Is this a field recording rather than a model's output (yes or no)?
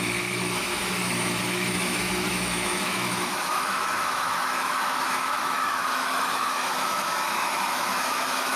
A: no